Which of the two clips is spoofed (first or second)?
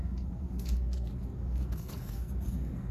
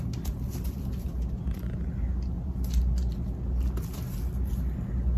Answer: first